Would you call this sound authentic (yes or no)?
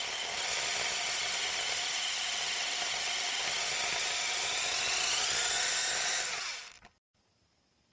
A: yes